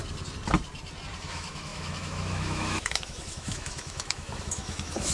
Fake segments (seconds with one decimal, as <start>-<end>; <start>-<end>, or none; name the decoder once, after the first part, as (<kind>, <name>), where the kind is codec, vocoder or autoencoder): 1.2-5.1 (autoencoder, DAC-VAE)